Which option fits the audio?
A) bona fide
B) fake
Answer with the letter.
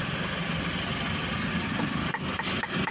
A